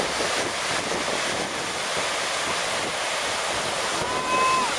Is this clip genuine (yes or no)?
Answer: yes